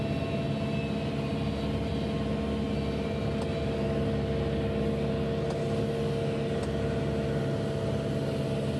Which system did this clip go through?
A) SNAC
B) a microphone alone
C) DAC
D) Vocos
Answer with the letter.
B